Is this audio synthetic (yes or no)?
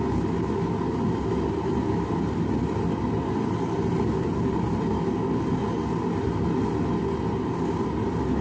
no